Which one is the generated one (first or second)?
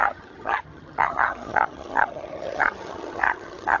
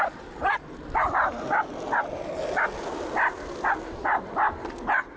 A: first